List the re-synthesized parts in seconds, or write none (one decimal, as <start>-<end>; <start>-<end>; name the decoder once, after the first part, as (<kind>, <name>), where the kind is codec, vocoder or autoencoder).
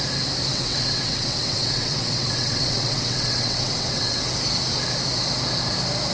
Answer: 0.5-4.2 (vocoder, WaveNeXt)